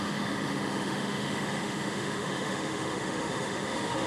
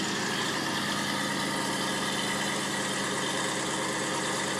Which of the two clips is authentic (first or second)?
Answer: second